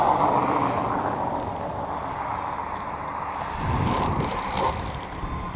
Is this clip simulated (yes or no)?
no